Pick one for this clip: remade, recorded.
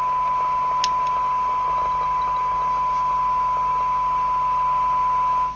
recorded